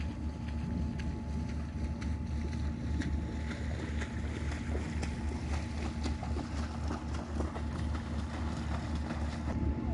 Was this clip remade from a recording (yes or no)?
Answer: no